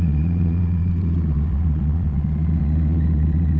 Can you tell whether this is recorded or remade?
remade